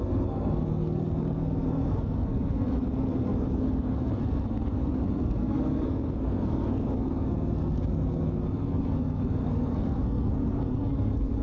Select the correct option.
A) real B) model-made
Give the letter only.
B